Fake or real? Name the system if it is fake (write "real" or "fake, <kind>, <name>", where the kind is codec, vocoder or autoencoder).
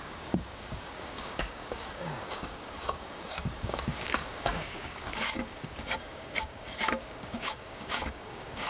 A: fake, codec, DAC